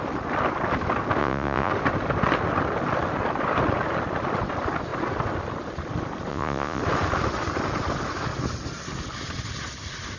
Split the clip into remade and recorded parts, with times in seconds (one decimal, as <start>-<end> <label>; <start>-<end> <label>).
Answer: 0.0-1.2 recorded; 1.2-1.7 remade; 1.7-6.3 recorded; 6.3-6.8 remade; 6.8-10.2 recorded